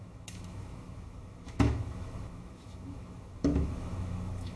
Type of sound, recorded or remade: remade